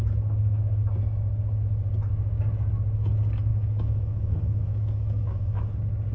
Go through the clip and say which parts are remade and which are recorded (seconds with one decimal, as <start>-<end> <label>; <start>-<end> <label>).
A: 0.0-3.5 recorded; 3.5-5.6 remade; 5.6-6.1 recorded